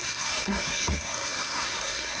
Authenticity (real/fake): fake